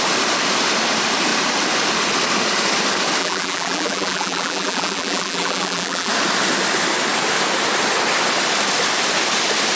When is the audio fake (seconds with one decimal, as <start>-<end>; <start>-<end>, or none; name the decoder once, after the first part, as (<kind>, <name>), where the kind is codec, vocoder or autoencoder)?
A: 3.2-6.1 (vocoder, BigVGAN v2)